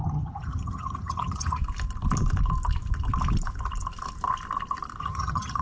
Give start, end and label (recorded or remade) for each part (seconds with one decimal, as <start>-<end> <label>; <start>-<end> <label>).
0.0-1.6 remade; 1.6-5.0 recorded; 5.0-5.6 remade